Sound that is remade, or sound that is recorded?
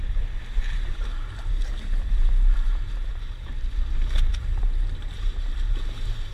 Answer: remade